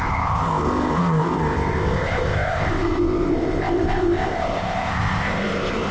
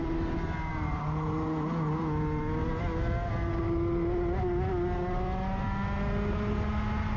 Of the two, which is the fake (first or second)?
first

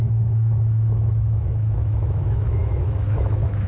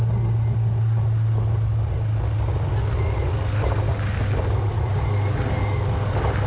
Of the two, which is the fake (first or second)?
first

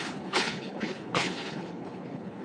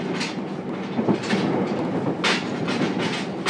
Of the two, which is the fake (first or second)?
first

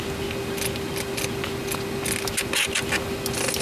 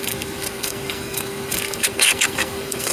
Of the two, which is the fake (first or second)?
second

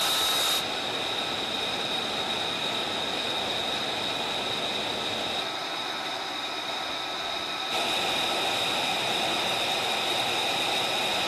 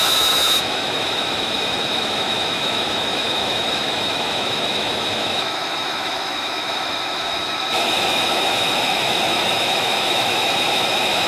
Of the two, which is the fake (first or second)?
second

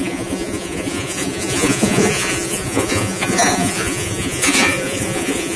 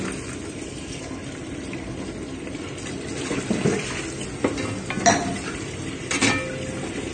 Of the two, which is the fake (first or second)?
first